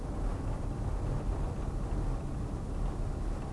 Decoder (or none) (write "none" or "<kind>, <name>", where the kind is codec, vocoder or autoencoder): none